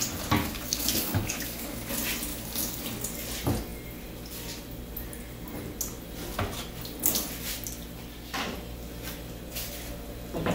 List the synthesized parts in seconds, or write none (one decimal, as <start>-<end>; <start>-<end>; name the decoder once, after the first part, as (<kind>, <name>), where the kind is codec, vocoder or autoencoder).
0.4-1.9 (codec, DAC); 2.3-2.8